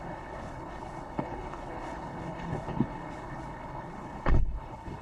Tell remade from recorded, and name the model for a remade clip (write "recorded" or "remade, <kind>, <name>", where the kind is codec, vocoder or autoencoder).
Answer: remade, codec, HILCodec